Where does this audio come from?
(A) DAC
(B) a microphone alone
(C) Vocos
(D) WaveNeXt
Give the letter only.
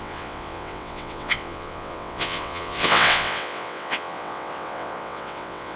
D